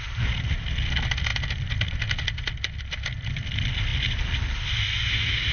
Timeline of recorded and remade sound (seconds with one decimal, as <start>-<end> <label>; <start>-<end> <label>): 0.0-5.5 recorded